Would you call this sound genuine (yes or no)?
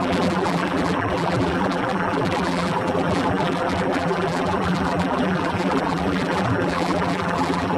no